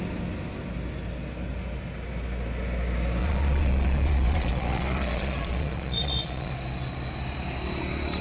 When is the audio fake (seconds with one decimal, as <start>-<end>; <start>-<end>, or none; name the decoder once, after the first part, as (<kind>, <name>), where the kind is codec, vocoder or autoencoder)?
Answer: 3.2-6.5 (vocoder, Vocos)